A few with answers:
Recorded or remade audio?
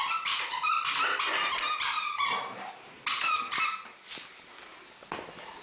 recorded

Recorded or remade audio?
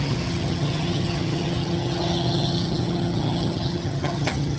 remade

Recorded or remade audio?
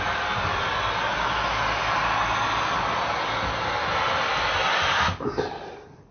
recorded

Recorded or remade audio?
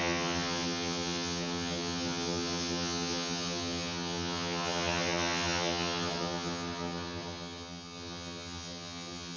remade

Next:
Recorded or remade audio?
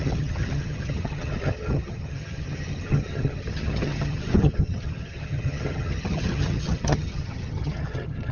remade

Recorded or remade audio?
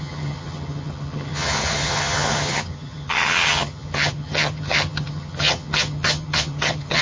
remade